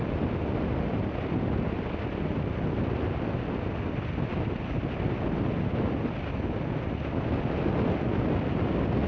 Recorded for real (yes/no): yes